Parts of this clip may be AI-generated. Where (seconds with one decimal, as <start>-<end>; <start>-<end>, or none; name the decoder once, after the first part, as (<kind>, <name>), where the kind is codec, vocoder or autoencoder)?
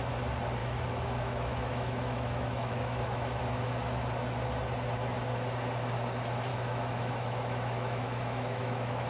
0.6-3.4 (autoencoder, DAC-VAE); 6.5-9.1